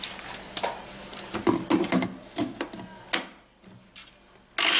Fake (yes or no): no